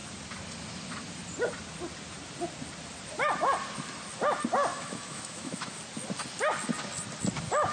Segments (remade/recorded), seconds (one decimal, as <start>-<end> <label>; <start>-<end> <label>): 0.0-4.7 recorded; 4.7-5.8 remade; 5.8-7.7 recorded